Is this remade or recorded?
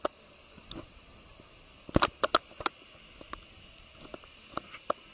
recorded